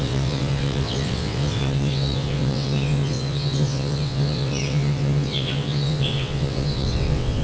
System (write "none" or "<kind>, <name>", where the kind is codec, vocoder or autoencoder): vocoder, WaveNeXt